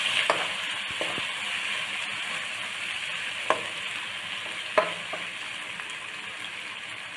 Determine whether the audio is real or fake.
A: real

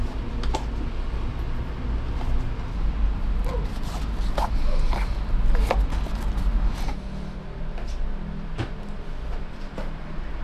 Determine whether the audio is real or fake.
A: real